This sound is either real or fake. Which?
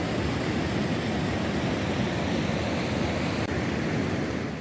real